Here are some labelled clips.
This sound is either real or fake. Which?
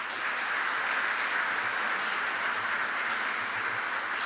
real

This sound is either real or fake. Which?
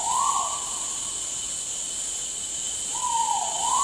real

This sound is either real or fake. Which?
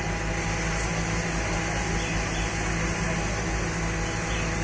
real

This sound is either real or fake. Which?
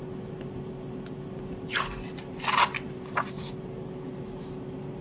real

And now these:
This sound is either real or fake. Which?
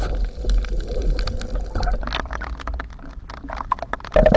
real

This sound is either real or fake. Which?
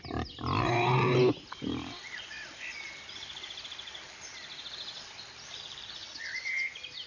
real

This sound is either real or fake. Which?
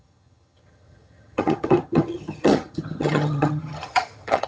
fake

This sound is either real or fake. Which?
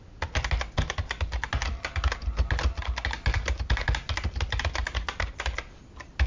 real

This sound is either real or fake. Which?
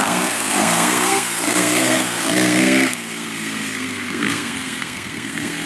fake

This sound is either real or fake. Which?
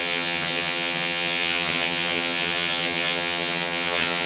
fake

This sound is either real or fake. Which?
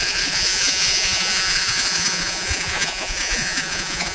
fake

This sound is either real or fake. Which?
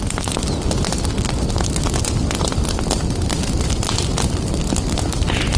real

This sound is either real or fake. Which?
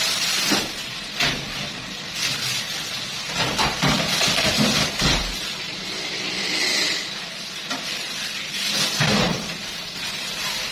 fake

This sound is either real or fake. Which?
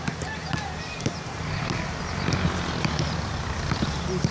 real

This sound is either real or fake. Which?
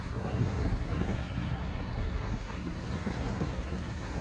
fake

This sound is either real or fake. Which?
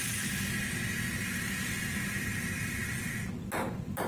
real